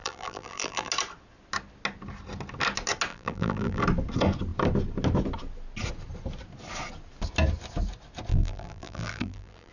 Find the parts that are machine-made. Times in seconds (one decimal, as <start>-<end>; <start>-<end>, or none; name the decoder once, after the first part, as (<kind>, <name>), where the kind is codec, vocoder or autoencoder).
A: 0.0-0.9 (vocoder, BigVGAN v2); 3.1-3.8; 8.3-9.7